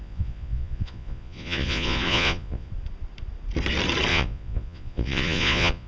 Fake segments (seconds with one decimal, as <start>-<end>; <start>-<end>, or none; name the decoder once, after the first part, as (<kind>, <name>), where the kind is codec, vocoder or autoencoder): 0.0-2.7 (vocoder, Vocos); 4.1-5.9